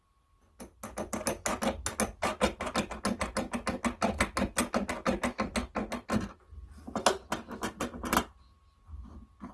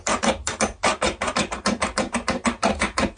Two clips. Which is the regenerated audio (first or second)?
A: second